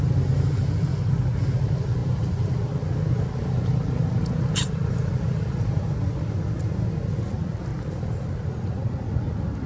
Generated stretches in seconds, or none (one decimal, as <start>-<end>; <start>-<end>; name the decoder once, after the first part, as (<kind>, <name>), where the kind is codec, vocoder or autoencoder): none